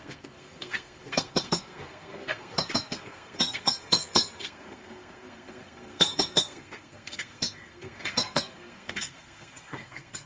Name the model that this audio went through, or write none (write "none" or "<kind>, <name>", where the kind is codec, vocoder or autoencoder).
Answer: codec, SNAC